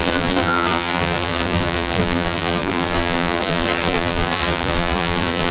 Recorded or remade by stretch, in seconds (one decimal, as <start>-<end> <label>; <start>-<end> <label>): 0.0-5.5 remade